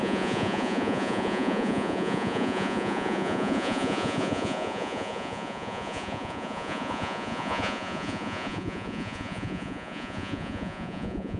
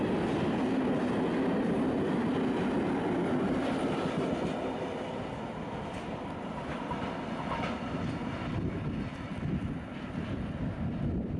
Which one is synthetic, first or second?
first